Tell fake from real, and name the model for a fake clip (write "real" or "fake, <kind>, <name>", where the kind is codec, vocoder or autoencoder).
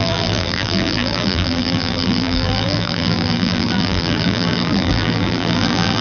fake, vocoder, BigVGAN v2